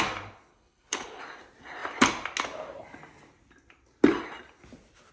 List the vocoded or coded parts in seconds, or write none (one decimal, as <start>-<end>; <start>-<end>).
0.5-1.2